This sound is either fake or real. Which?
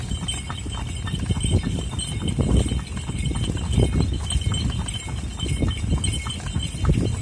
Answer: real